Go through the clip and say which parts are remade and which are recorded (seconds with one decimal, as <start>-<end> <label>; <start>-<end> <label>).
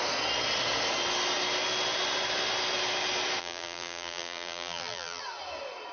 0.0-3.4 recorded; 3.4-5.2 remade; 5.2-5.9 recorded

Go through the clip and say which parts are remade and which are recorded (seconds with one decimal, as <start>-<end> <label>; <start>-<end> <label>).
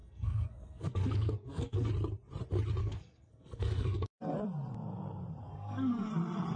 0.0-1.9 remade; 1.9-2.8 recorded; 2.8-4.2 remade; 4.2-5.4 recorded; 5.4-6.1 remade; 6.1-6.6 recorded